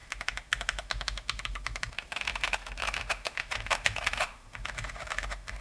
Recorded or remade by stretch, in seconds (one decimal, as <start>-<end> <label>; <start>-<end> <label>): 0.0-5.6 remade